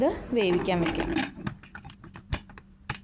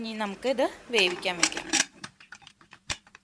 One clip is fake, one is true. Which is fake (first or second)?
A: second